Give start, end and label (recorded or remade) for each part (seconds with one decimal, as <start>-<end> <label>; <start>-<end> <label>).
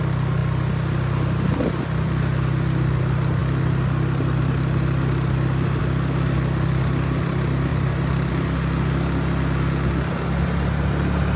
0.0-11.4 recorded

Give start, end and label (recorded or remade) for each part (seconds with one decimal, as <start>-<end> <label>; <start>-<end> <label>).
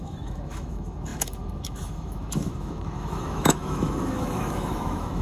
0.0-5.2 remade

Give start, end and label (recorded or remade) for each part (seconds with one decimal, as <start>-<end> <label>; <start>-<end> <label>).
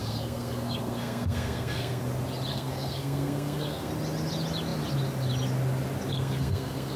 0.0-2.0 remade; 2.0-2.5 recorded; 2.5-3.9 remade; 3.9-6.1 recorded; 6.1-7.0 remade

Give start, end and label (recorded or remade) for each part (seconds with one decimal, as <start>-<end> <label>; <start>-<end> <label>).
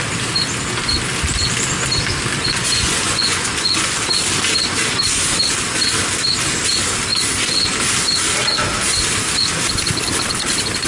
0.0-2.4 recorded; 2.4-4.0 remade; 4.0-10.9 recorded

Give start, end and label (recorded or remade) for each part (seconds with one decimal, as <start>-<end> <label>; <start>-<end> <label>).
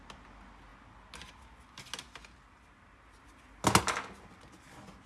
0.0-5.1 recorded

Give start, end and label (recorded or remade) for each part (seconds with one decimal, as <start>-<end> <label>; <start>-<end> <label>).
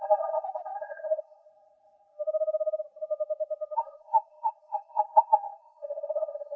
0.0-1.5 remade; 1.5-3.8 recorded; 3.8-6.6 remade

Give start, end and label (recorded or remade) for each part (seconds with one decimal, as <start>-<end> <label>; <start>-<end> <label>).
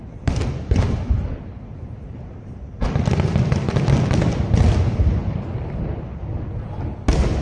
0.0-3.7 remade; 3.7-5.2 recorded; 5.2-5.8 remade; 5.8-7.4 recorded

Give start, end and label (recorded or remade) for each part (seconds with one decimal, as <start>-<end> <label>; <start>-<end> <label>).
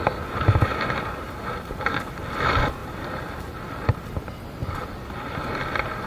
0.0-0.7 recorded; 0.7-2.1 remade; 2.1-2.8 recorded; 2.8-3.5 remade; 3.5-6.1 recorded